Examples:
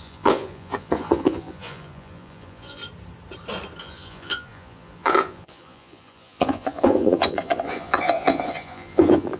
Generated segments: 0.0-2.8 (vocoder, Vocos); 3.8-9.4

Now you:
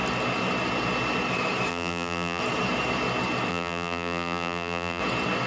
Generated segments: 1.7-2.4 (vocoder, BigVGAN v2); 3.5-5.0

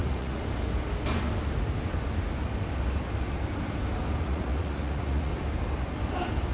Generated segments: 0.0-0.4 (vocoder, Vocos); 4.2-5.3